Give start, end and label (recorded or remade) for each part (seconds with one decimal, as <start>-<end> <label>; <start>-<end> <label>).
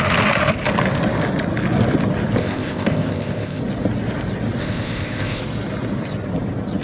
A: 0.0-2.4 recorded; 2.4-3.6 remade; 3.6-4.6 recorded; 4.6-5.4 remade; 5.4-6.8 recorded